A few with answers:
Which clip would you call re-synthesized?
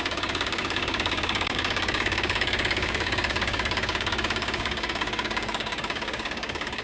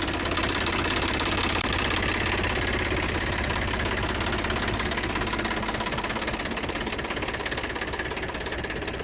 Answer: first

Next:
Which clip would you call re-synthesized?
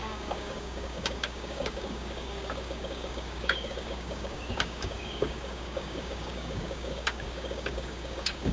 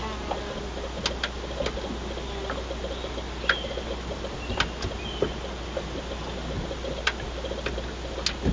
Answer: first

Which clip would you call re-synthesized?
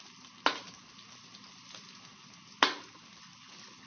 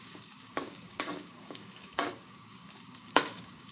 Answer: second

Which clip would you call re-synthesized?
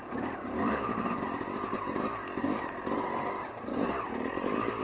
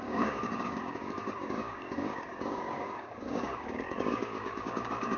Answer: second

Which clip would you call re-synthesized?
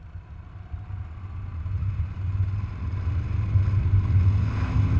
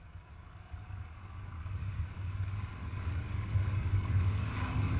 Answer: second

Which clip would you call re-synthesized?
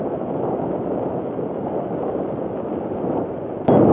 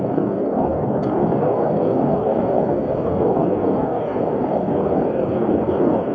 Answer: second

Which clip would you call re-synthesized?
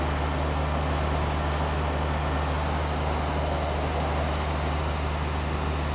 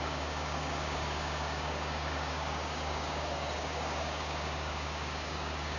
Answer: second